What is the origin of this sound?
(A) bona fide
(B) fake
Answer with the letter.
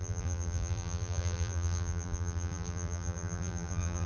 B